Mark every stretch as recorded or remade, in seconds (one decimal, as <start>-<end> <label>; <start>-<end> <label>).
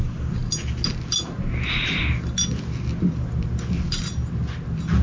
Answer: 0.0-5.0 recorded